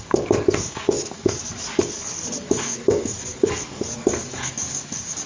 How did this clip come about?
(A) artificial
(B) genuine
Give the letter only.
A